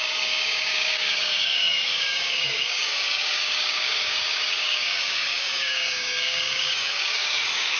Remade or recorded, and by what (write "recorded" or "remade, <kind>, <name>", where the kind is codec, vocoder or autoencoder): remade, codec, DAC